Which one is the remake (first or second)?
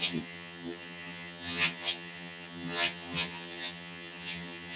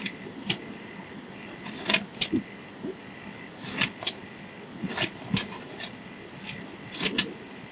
first